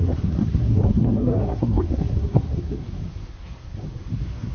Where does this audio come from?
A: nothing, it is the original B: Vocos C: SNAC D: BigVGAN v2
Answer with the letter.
C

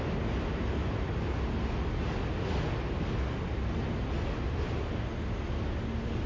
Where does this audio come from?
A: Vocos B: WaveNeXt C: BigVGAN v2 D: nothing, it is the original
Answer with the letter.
D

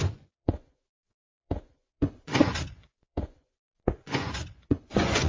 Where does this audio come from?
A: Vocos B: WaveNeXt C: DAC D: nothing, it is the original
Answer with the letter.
A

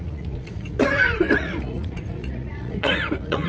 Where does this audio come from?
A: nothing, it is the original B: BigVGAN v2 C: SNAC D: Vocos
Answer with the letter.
D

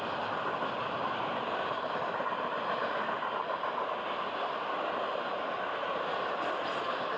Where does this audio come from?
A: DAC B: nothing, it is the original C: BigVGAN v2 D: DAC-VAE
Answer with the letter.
B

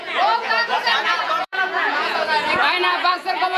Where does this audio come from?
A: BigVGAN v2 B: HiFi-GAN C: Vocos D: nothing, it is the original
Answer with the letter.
C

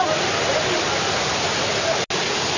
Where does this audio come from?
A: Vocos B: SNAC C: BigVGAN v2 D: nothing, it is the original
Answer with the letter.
D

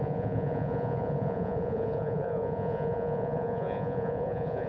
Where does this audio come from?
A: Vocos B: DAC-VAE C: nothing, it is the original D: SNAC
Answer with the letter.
A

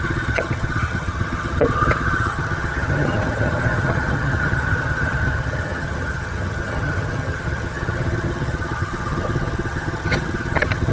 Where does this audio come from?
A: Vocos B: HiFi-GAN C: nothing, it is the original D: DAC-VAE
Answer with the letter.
B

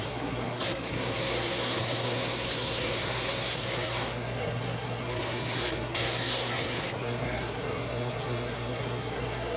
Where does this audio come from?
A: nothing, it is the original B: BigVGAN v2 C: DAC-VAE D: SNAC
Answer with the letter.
D